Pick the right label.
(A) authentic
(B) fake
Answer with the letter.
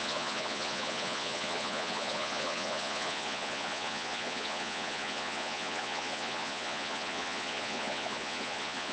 B